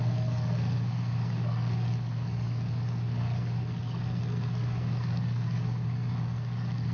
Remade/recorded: remade